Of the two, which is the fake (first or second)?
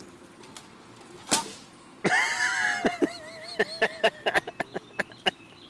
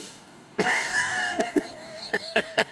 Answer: second